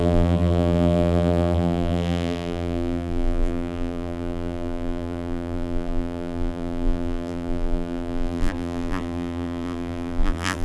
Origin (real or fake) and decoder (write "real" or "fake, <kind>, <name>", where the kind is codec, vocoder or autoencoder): fake, vocoder, BigVGAN v2